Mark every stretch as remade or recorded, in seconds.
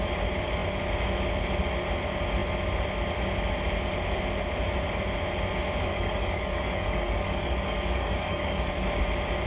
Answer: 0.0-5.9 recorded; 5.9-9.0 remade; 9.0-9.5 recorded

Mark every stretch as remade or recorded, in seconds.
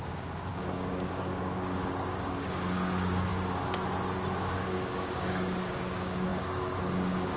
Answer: 0.0-3.3 remade; 3.3-4.5 recorded; 4.5-7.4 remade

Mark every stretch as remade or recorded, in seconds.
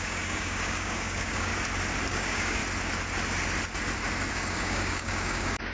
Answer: 0.0-1.5 remade; 1.5-2.1 recorded; 2.1-2.6 remade; 2.6-4.3 recorded; 4.3-5.7 remade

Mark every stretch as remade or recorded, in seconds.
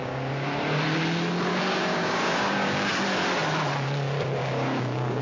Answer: 0.0-0.8 remade; 0.8-1.5 recorded; 1.5-2.9 remade; 2.9-4.4 recorded; 4.4-5.2 remade